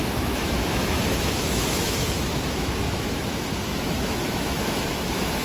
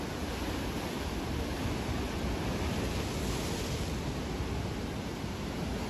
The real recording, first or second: second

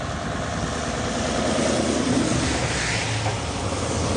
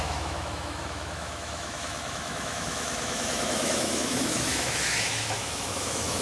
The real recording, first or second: first